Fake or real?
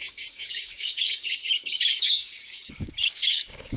fake